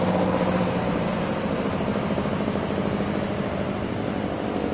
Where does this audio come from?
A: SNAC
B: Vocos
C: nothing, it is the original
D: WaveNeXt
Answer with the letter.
C